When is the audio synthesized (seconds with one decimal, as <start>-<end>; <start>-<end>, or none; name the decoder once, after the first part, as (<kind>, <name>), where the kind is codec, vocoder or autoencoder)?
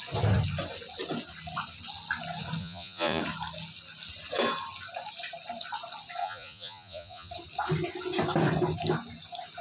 2.6-3.2 (vocoder, Vocos); 6.2-7.3